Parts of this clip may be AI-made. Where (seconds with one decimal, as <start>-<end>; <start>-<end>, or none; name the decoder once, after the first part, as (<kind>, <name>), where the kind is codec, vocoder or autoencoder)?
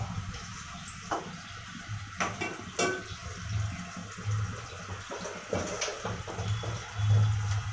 none